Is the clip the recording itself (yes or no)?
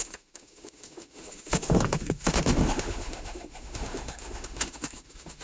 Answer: no